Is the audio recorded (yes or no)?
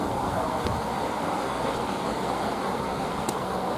no